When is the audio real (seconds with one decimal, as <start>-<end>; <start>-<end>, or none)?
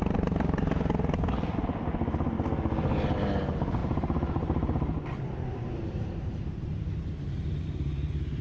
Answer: 0.0-3.8; 7.1-8.4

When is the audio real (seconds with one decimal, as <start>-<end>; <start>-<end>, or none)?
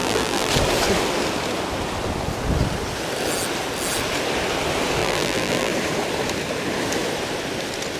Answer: 0.5-5.0; 5.7-8.0